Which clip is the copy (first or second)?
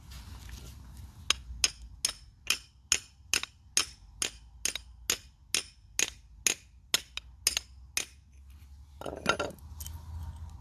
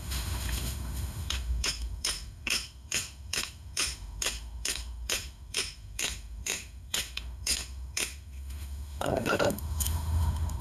second